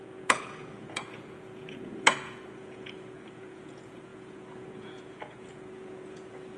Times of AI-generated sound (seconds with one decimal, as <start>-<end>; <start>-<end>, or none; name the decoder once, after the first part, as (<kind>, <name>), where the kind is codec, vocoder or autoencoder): 0.0-6.6 (vocoder, Vocos)